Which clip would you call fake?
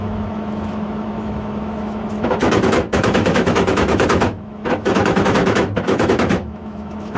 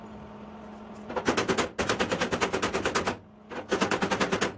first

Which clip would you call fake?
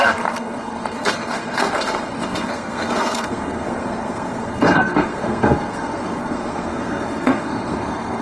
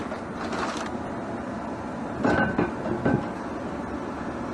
first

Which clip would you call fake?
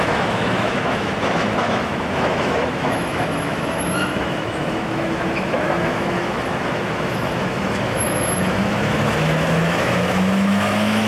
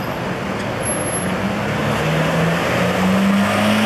first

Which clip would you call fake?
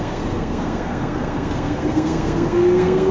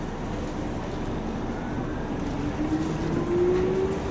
first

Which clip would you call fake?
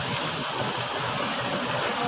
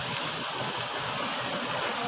second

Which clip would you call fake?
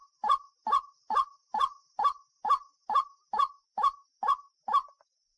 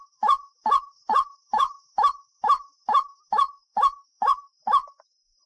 second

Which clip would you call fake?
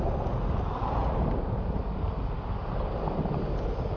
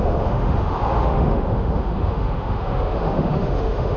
second